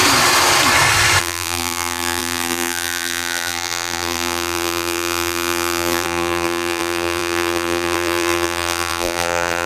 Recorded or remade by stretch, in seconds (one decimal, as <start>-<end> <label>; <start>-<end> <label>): 0.0-1.2 recorded; 1.2-9.7 remade

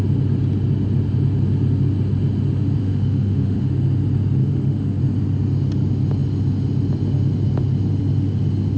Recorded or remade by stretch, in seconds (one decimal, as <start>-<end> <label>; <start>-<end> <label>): 0.0-2.8 recorded; 2.8-3.7 remade; 3.7-4.4 recorded; 4.4-5.0 remade; 5.0-8.8 recorded

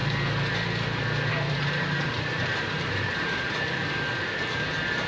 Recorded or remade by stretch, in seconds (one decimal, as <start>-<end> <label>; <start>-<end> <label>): 0.0-1.3 recorded; 1.3-4.4 remade; 4.4-5.1 recorded

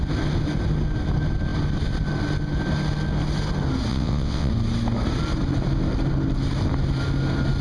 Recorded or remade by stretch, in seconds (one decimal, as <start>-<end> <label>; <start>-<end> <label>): 0.0-3.9 recorded; 3.9-4.5 remade; 4.5-7.6 recorded

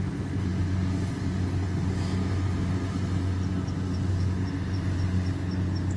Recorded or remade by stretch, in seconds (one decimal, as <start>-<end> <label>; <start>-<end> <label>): 0.0-6.0 recorded